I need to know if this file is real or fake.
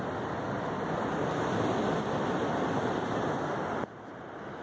real